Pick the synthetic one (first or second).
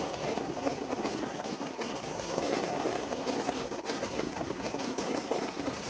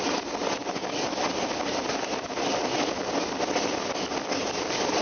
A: first